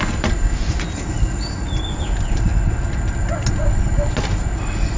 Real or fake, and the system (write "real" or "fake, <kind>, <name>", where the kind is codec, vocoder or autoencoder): real